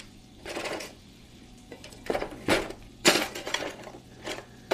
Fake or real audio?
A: fake